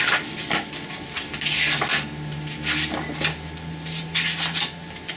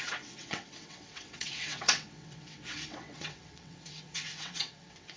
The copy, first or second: second